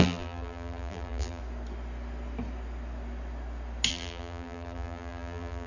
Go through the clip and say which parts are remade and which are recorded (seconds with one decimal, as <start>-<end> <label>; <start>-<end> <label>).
0.0-1.4 remade; 1.4-3.9 recorded; 3.9-5.7 remade